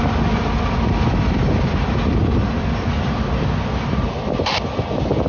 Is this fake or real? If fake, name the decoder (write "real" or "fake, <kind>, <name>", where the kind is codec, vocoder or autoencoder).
real